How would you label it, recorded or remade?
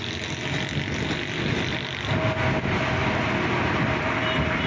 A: recorded